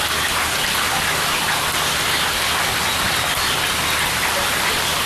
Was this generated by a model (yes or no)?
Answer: no